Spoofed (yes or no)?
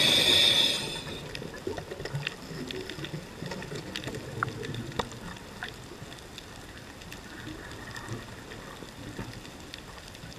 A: no